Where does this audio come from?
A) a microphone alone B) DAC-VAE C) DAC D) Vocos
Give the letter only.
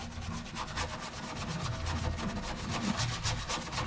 A